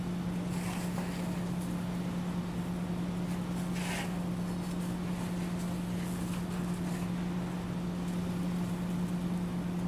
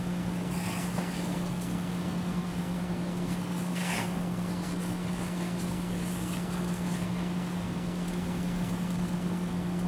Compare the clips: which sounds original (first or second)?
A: first